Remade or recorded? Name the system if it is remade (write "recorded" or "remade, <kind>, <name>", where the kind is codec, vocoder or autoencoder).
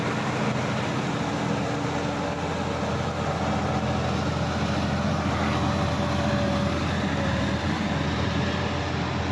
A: recorded